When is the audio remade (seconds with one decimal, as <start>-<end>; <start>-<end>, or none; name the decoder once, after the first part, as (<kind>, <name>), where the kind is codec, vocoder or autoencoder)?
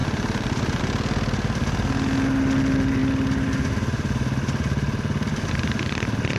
0.0-0.8 (vocoder, BigVGAN v2)